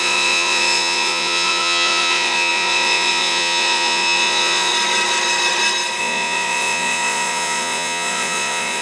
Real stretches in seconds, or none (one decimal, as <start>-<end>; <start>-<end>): 4.7-6.0